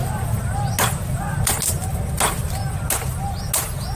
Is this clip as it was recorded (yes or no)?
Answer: yes